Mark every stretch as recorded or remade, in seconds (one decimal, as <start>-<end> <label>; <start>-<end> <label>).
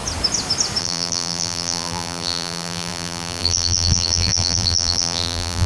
0.0-0.8 recorded; 0.8-5.7 remade